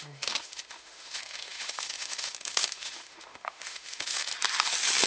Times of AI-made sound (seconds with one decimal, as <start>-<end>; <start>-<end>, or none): 0.0-4.3